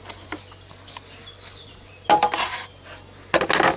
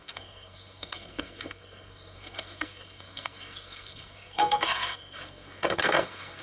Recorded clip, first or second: first